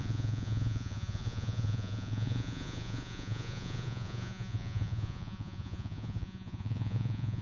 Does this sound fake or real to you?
fake